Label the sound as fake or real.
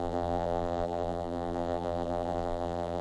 fake